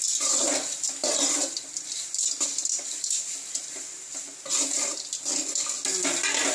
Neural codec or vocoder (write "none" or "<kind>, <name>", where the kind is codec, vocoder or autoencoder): none